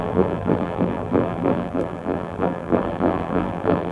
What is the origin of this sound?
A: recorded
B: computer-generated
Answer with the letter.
B